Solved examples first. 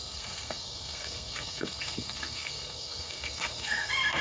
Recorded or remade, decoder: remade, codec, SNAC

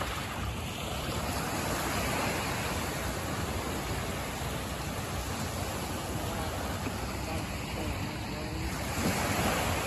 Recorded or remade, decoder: recorded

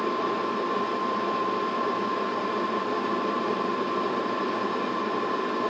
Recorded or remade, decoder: recorded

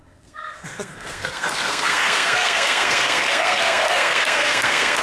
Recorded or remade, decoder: remade, codec, SNAC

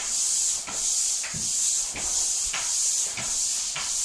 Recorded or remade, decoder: recorded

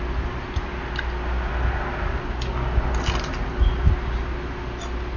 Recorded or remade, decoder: recorded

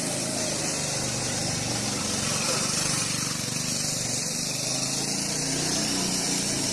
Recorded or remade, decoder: recorded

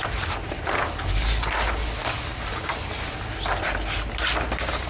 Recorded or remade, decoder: recorded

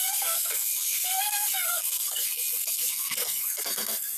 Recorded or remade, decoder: remade, codec, SNAC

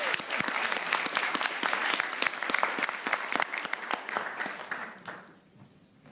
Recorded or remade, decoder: recorded